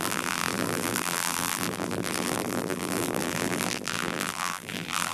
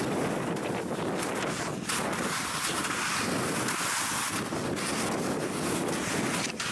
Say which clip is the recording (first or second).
second